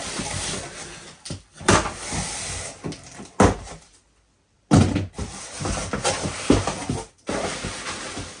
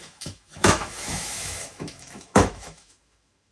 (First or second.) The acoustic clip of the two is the first